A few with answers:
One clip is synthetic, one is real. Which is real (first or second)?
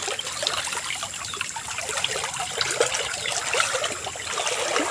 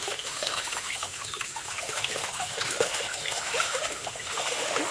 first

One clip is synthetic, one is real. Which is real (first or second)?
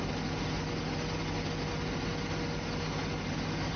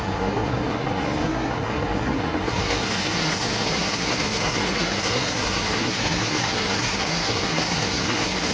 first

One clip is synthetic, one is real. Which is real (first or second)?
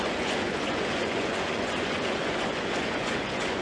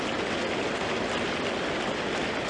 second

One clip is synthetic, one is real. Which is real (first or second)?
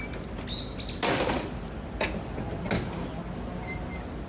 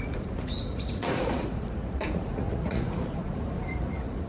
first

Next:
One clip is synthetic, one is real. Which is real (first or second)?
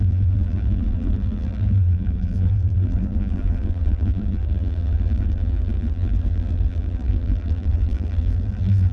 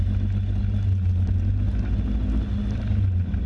second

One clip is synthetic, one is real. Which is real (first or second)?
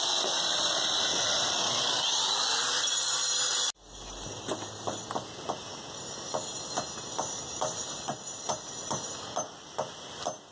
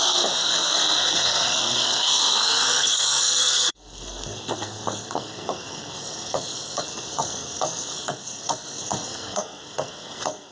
first